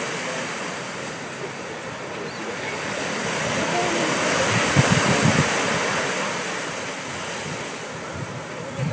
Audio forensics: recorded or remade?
recorded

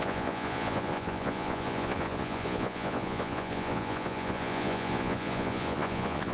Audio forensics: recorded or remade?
remade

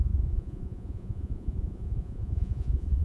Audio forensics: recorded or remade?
remade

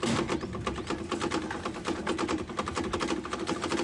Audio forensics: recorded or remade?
recorded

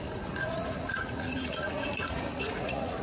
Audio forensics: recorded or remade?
remade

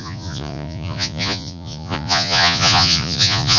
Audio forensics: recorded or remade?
remade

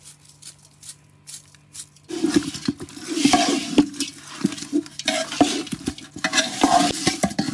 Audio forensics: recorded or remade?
recorded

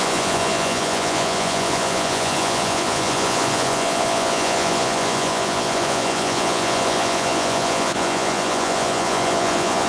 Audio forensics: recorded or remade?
remade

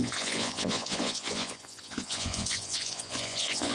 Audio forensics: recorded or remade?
remade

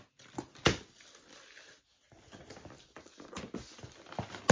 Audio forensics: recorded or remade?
recorded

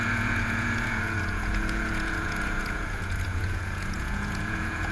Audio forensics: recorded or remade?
remade